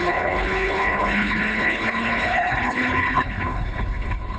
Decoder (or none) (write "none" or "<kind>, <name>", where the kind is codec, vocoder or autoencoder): codec, HILCodec